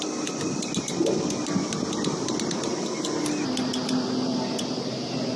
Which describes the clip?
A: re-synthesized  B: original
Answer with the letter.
B